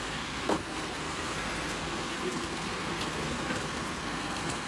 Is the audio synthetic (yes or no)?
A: yes